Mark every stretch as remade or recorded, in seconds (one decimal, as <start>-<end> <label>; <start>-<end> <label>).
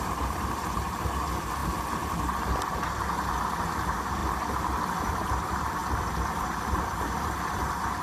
0.0-1.6 remade; 1.6-2.7 recorded; 2.7-4.2 remade; 4.2-5.0 recorded; 5.0-5.8 remade; 5.8-6.4 recorded; 6.4-8.0 remade